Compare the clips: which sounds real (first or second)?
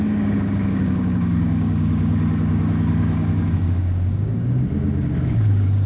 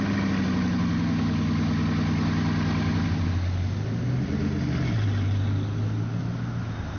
second